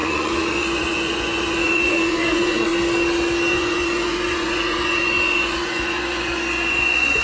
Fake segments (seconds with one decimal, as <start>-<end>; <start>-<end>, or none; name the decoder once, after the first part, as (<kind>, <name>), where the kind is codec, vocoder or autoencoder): 0.0-2.7 (vocoder, Vocos); 3.5-7.2